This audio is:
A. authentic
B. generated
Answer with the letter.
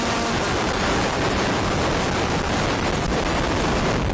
A